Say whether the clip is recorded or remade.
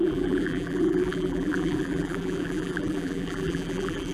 remade